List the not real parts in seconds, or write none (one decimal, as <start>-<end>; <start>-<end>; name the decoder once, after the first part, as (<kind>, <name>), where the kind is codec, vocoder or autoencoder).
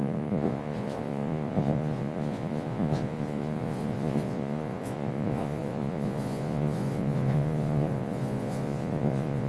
0.0-9.5 (vocoder, Vocos)